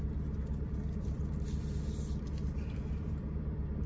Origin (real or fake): fake